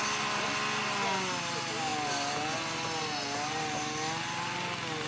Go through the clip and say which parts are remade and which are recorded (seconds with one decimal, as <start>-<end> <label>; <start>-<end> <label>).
0.0-5.1 recorded

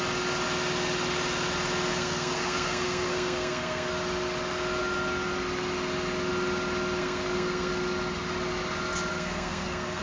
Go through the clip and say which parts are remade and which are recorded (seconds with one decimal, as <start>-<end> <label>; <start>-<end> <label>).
0.0-1.9 recorded; 1.9-3.9 remade; 3.9-7.0 recorded; 7.0-7.7 remade; 7.7-9.1 recorded; 9.1-10.0 remade

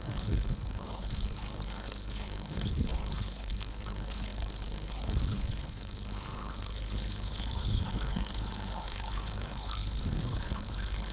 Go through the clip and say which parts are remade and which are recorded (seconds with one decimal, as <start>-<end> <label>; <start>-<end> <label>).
0.0-11.1 remade

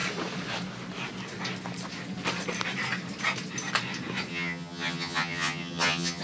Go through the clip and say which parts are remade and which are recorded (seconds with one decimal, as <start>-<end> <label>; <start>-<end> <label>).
0.0-4.3 recorded; 4.3-6.2 remade

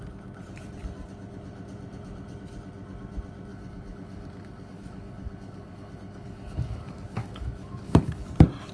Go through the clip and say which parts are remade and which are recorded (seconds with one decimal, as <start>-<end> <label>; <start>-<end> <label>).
0.0-3.5 recorded; 3.5-8.2 remade; 8.2-8.7 recorded

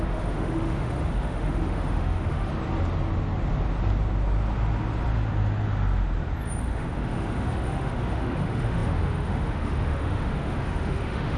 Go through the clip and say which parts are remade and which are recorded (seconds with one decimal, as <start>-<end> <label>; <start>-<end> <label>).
0.0-2.5 remade; 2.5-6.6 recorded; 6.6-11.4 remade

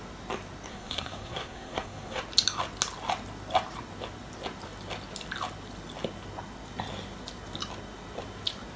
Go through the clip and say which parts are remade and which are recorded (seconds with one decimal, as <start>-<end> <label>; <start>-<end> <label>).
0.0-0.7 recorded; 0.7-2.2 remade; 2.2-8.8 recorded